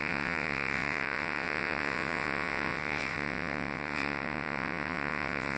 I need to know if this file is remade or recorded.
remade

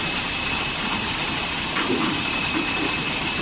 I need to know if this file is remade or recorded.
remade